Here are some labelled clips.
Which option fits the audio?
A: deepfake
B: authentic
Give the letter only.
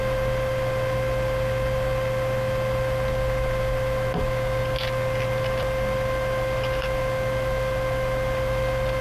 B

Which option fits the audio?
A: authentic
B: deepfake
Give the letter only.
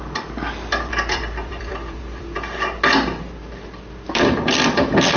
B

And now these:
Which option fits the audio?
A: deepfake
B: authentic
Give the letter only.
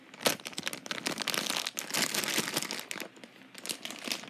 B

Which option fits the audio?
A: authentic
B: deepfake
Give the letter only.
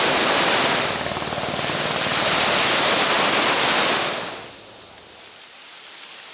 A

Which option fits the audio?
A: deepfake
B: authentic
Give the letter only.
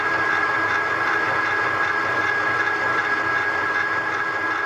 B